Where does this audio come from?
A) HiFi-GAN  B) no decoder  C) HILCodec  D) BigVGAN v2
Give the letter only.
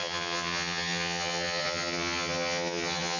A